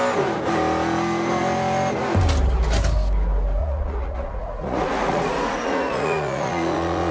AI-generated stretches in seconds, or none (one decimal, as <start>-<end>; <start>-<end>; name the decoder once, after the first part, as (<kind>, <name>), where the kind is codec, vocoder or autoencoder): 3.6-7.1 (vocoder, Vocos)